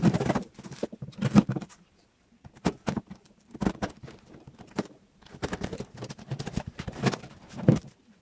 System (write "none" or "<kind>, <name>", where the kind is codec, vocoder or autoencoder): vocoder, BigVGAN v2